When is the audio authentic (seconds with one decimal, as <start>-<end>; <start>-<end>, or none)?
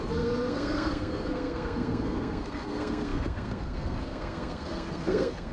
none